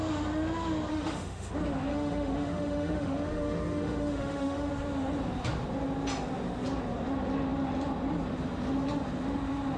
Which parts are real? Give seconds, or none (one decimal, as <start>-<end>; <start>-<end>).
0.0-0.9; 1.5-1.9; 4.7-9.8